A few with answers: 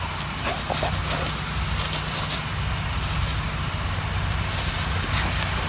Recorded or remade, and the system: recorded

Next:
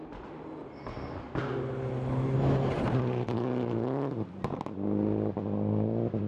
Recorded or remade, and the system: recorded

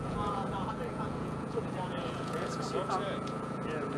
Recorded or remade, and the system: remade, vocoder, Vocos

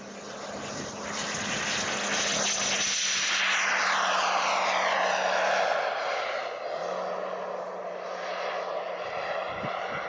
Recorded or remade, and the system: recorded